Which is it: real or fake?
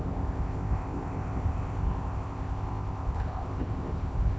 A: fake